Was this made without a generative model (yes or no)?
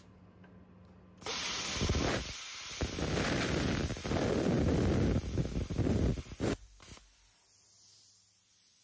yes